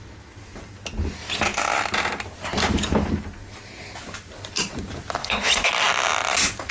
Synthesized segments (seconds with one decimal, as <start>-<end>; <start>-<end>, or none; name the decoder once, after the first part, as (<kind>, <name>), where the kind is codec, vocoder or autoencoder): 5.2-5.7 (codec, HILCodec)